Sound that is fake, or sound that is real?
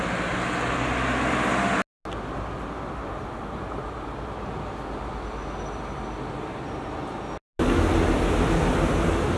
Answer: real